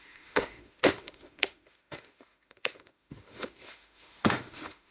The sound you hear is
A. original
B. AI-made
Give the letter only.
B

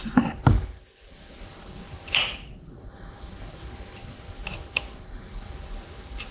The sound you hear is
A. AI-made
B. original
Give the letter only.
A